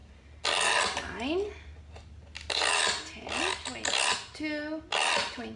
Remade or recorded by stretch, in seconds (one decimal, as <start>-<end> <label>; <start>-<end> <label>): 0.0-5.6 recorded